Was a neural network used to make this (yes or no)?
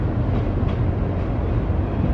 no